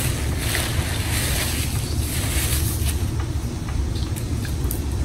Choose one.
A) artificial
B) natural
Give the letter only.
B